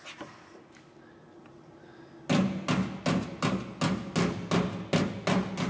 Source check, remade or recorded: recorded